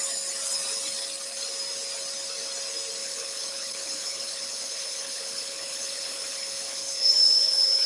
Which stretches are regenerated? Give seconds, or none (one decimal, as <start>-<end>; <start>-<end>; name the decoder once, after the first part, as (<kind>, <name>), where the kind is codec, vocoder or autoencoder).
3.0-7.9 (codec, HILCodec)